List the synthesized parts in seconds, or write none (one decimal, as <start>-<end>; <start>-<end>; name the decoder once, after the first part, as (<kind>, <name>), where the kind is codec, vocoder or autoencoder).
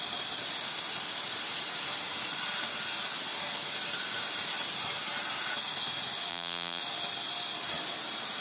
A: 6.3-6.8 (vocoder, BigVGAN v2)